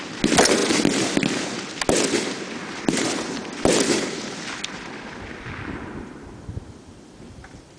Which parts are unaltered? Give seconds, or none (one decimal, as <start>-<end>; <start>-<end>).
0.0-7.8